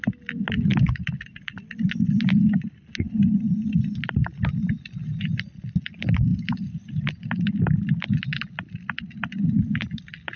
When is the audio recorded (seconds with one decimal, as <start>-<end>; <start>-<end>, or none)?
0.0-10.4